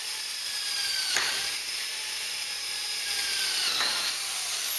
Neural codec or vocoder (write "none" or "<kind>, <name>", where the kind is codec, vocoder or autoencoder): none